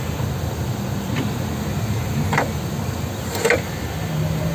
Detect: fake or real real